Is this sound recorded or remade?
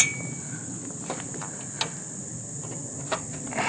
recorded